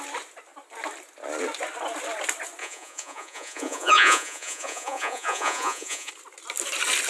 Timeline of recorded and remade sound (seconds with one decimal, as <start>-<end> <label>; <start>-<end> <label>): 0.0-2.6 recorded; 2.6-6.1 remade; 6.1-7.1 recorded